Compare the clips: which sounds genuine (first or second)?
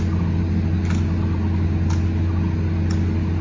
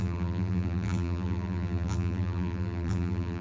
first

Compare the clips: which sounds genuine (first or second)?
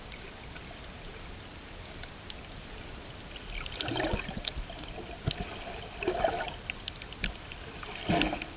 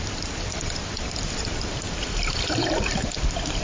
first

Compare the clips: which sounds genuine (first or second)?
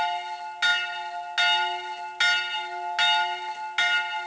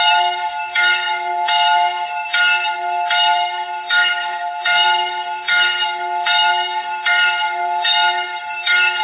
first